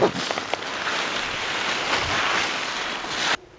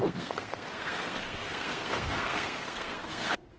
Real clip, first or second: first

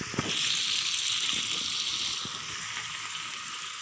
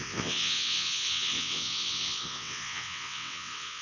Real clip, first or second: first